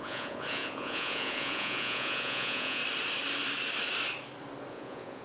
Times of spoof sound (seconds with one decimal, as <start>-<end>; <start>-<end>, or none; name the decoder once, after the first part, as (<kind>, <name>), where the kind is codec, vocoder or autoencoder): 0.0-2.8 (vocoder, Vocos); 4.7-5.2